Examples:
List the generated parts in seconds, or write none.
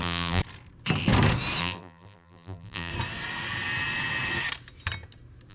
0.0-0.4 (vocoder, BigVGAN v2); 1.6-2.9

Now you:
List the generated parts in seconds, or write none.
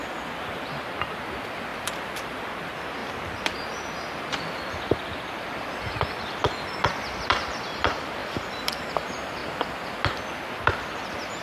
8.2-8.8 (vocoder, BigVGAN v2)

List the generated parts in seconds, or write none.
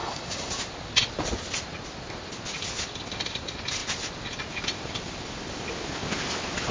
0.0-0.6 (codec, DAC)